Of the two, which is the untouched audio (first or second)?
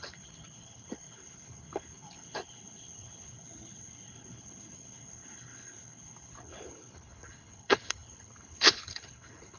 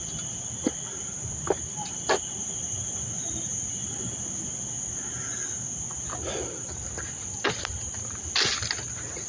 second